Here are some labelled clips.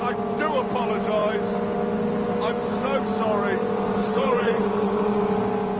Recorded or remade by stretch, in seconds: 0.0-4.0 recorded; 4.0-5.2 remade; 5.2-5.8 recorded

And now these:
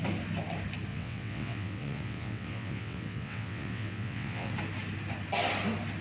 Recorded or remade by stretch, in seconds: 0.0-0.9 recorded; 0.9-4.5 remade; 4.5-6.0 recorded

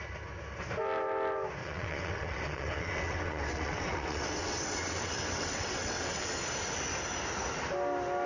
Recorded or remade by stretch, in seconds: 0.0-1.6 recorded; 1.6-6.3 remade; 6.3-8.3 recorded

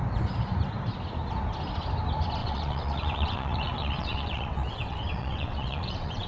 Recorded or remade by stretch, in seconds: 0.0-2.4 recorded; 2.4-6.3 remade

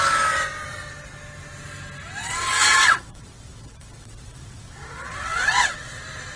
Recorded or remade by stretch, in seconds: 0.0-2.2 recorded; 2.2-6.0 remade; 6.0-6.4 recorded